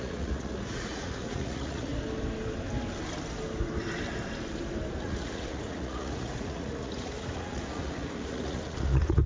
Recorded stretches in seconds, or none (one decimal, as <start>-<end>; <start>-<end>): 1.9-5.0